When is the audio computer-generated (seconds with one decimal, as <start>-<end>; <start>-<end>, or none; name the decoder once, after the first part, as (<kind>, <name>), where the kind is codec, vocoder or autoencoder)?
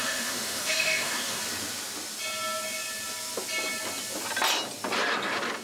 0.0-1.4 (autoencoder, DAC-VAE)